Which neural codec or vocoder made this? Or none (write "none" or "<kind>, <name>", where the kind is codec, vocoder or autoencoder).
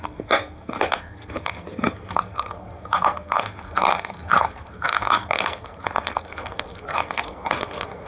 codec, SNAC